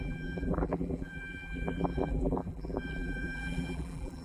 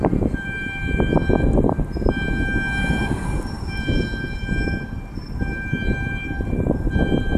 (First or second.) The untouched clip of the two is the second